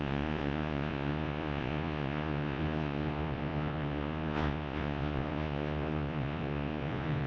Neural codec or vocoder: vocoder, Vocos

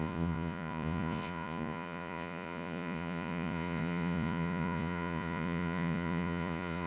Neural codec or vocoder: vocoder, Vocos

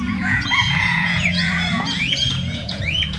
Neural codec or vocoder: vocoder, Vocos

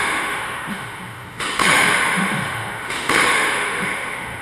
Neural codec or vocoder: autoencoder, DAC-VAE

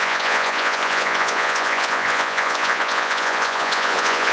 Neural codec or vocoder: vocoder, Vocos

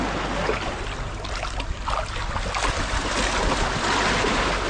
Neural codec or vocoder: none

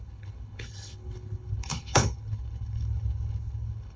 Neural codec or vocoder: codec, HILCodec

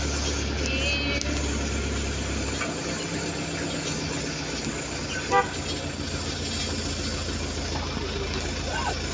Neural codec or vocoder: none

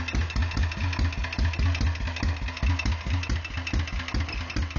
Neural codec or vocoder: none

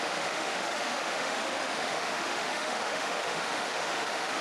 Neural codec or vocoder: autoencoder, DAC-VAE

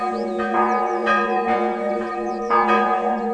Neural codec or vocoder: vocoder, Vocos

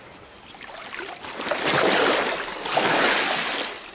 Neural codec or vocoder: none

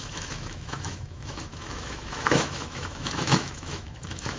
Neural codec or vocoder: autoencoder, DAC-VAE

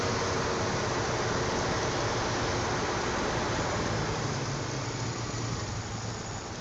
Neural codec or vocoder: none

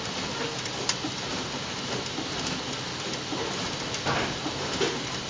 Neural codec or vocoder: none